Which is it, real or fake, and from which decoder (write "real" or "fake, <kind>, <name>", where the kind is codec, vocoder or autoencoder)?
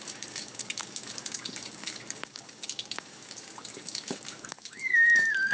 fake, codec, DAC